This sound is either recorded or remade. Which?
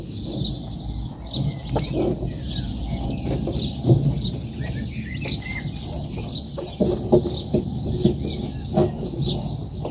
recorded